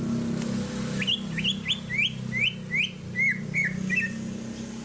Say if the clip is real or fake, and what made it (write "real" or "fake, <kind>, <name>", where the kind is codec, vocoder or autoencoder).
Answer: real